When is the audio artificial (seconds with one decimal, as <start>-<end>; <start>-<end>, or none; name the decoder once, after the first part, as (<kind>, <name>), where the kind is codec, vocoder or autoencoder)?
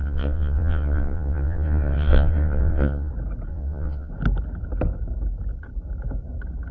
0.0-3.1 (vocoder, WaveNeXt); 3.5-4.1